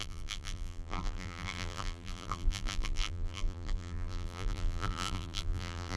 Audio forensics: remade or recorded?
remade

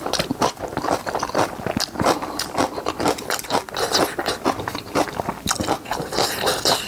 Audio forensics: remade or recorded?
remade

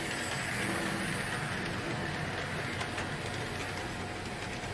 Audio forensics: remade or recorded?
recorded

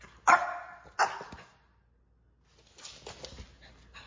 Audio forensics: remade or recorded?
recorded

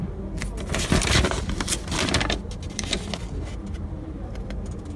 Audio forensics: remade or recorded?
recorded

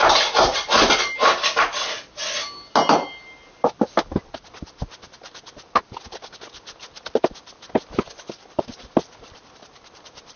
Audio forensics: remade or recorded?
recorded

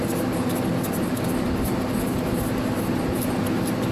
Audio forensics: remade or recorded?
recorded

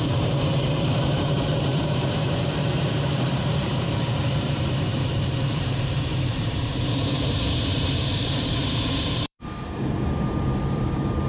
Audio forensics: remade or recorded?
remade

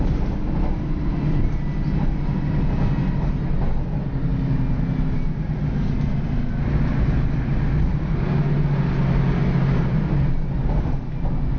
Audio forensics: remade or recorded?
recorded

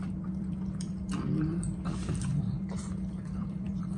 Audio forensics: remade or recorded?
remade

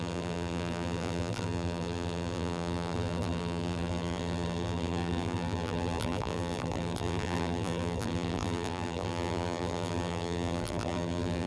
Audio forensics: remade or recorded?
remade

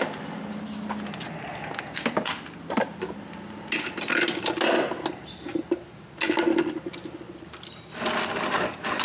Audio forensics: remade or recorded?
recorded